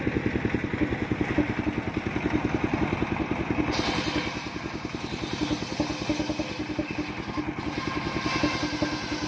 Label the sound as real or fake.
real